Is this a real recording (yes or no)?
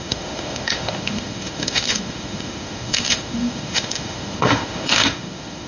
no